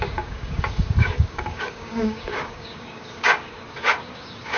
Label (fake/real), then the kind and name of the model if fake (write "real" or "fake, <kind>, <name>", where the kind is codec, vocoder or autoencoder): fake, codec, DAC